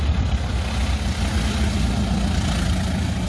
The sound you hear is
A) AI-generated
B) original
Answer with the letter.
B